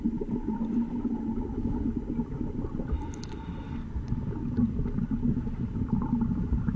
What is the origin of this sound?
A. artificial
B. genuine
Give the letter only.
B